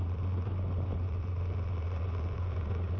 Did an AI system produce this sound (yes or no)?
yes